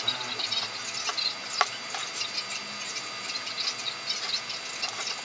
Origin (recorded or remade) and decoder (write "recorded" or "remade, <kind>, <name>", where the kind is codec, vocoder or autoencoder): recorded